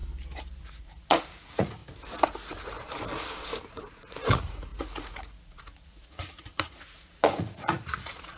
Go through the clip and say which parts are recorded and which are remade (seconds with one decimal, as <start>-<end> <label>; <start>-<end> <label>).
0.0-0.6 recorded; 0.6-1.8 remade; 1.8-3.7 recorded; 3.7-8.4 remade